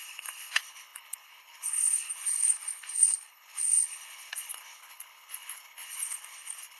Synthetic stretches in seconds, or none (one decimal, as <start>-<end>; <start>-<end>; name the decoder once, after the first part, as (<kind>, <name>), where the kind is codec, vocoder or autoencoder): 0.0-6.8 (codec, HILCodec)